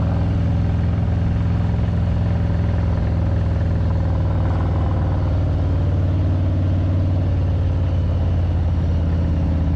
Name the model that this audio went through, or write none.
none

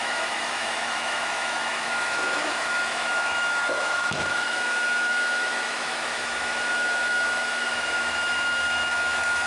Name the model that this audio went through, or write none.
autoencoder, DAC-VAE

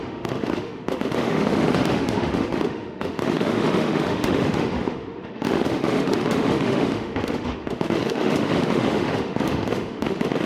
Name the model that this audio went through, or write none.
autoencoder, DAC-VAE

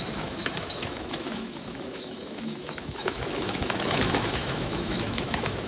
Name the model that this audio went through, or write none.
autoencoder, DAC-VAE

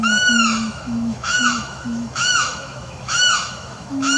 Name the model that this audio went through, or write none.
autoencoder, DAC-VAE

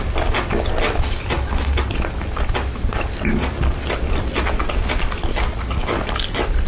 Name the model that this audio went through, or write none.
none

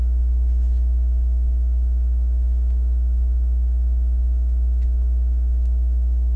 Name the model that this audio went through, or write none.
autoencoder, DAC-VAE